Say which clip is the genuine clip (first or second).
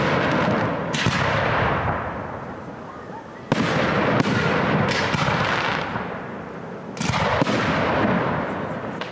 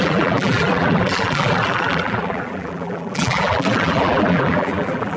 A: first